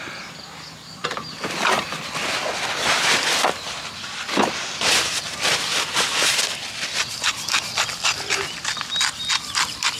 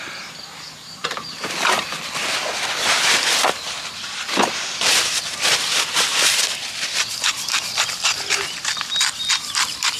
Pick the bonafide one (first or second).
first